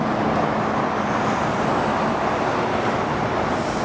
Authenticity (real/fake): real